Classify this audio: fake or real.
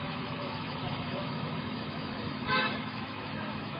fake